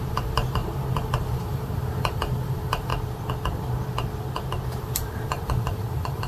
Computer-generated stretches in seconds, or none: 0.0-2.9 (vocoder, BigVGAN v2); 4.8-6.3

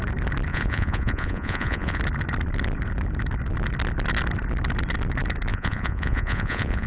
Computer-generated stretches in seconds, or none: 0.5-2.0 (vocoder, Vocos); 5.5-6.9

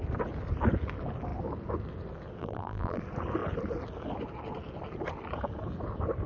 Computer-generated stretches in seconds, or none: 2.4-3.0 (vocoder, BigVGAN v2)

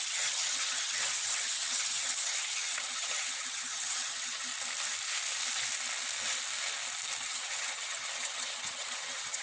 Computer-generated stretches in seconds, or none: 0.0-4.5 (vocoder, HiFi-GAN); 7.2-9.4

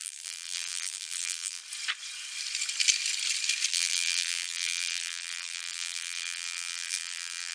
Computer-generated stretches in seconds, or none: 0.0-1.6 (vocoder, BigVGAN v2); 3.7-7.5

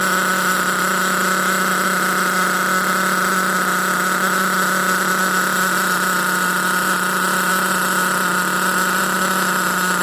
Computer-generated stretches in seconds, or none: none